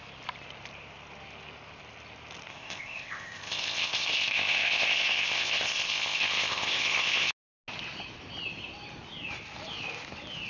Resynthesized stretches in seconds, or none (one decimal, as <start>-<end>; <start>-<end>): 2.5-7.3

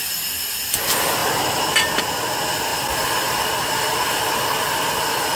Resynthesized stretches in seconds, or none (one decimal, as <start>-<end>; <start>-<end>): 1.2-2.0; 2.7-5.0

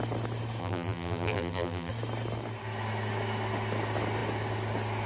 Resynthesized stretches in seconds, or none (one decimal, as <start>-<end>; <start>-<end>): 0.6-1.9

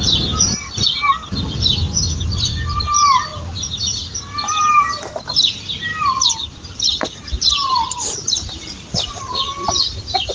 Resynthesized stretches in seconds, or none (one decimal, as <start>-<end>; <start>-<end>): 3.3-4.2; 5.9-8.6

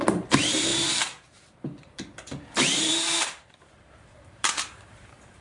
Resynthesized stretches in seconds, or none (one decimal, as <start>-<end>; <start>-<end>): 0.0-5.4